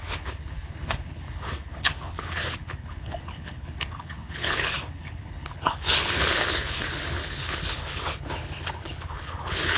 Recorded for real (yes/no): no